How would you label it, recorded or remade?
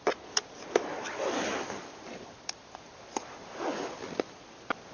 recorded